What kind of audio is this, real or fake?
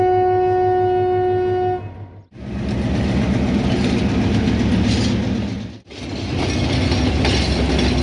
real